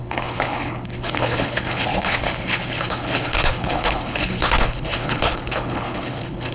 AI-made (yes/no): yes